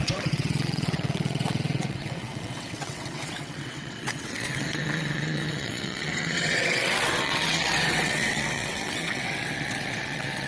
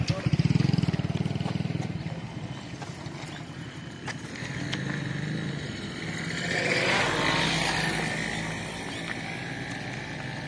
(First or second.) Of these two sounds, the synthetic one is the first